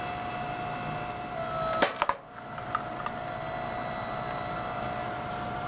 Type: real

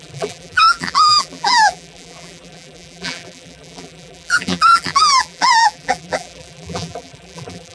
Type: fake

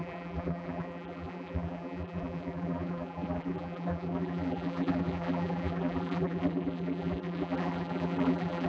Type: fake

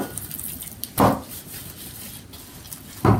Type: real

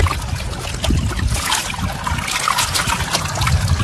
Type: real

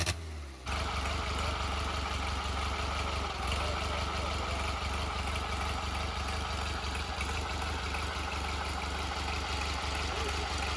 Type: real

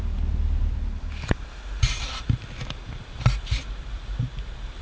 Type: fake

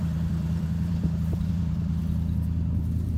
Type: fake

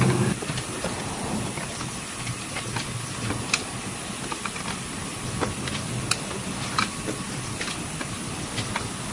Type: fake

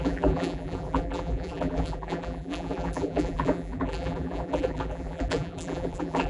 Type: fake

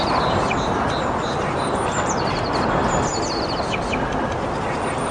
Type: real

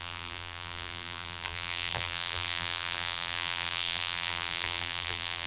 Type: fake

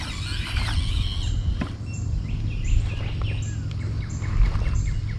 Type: real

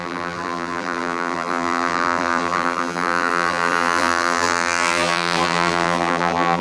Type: fake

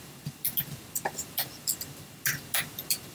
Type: fake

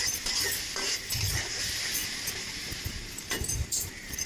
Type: fake